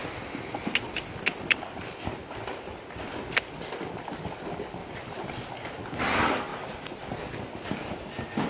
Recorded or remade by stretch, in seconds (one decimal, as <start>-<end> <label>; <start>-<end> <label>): 0.0-4.8 recorded; 4.8-5.5 remade; 5.5-8.5 recorded